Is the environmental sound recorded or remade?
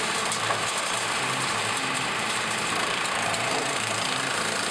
remade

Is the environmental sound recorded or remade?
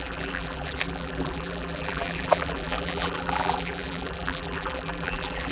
remade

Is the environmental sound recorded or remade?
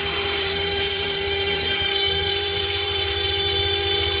remade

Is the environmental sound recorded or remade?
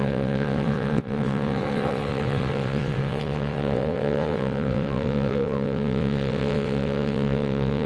remade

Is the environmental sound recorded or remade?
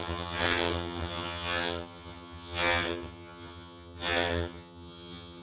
remade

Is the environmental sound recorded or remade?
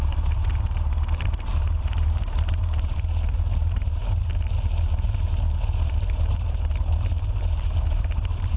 remade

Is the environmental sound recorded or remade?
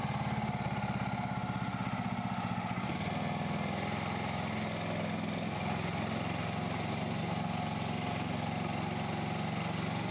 recorded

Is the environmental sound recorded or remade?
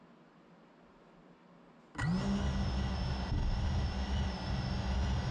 recorded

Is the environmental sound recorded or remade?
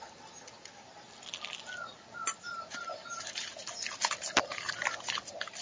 recorded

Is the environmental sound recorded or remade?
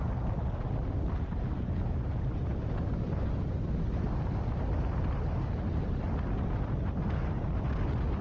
recorded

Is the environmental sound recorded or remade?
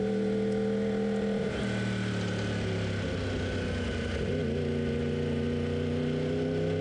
recorded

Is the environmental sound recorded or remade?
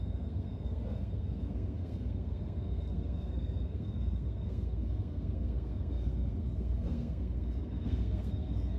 remade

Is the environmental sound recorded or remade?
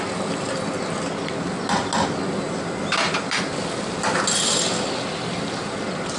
recorded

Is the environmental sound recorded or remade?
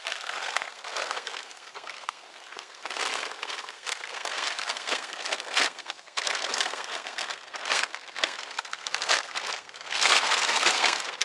remade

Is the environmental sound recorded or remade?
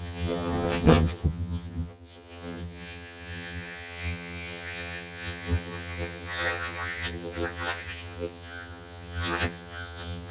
remade